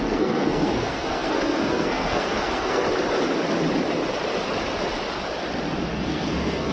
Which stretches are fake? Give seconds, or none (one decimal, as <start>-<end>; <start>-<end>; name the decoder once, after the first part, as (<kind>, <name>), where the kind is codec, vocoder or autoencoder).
0.0-2.9 (codec, SNAC); 5.9-6.7